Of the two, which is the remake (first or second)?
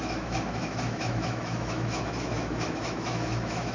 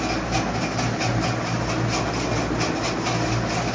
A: first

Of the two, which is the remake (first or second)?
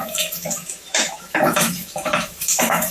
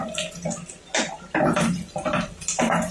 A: first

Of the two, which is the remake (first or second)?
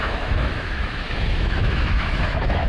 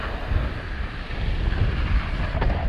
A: first